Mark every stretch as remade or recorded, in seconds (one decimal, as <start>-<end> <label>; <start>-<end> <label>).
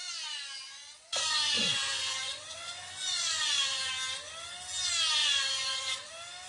0.0-3.9 remade; 3.9-5.2 recorded; 5.2-6.1 remade; 6.1-6.5 recorded